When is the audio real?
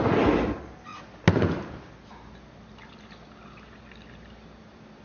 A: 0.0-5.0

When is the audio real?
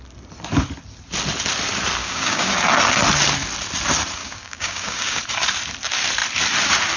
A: 0.0-2.0; 2.5-4.2; 5.2-7.0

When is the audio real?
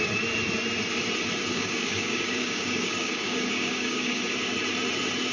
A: 0.0-1.5; 4.2-5.3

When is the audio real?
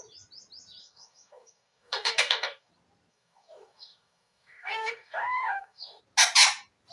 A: 0.0-0.8; 2.7-3.1; 6.0-6.9